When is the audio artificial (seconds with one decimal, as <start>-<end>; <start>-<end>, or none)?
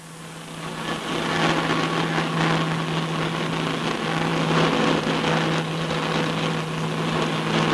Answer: none